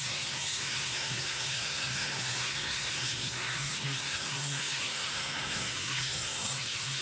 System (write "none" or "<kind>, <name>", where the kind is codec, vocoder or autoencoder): codec, SNAC